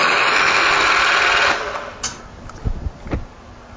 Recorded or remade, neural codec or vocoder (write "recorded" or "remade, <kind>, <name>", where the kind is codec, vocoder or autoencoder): recorded